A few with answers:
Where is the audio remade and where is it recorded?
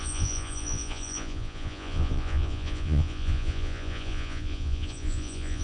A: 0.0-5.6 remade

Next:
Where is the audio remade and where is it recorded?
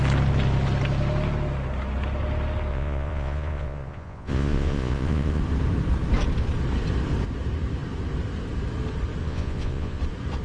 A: 0.0-2.7 recorded; 2.7-5.4 remade; 5.4-9.2 recorded; 9.2-10.0 remade; 10.0-10.4 recorded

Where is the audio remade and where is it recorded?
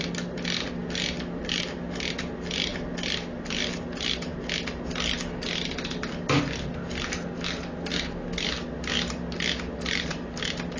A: 0.0-10.8 recorded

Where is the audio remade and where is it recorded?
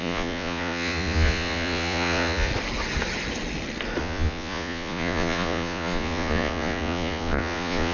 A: 0.0-2.5 remade; 2.5-4.0 recorded; 4.0-7.9 remade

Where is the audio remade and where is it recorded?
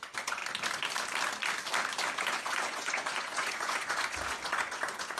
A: 0.0-0.4 remade; 0.4-2.2 recorded; 2.2-5.2 remade